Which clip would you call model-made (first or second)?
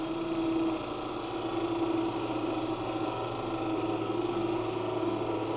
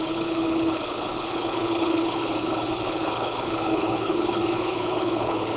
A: second